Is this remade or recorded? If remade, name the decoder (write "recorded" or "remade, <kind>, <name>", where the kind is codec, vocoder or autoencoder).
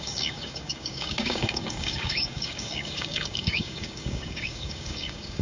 remade, codec, DAC